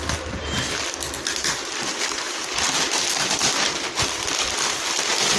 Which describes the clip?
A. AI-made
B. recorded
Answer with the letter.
B